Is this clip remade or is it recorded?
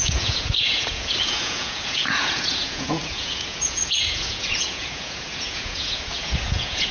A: remade